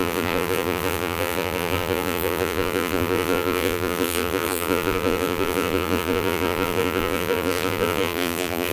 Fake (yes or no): yes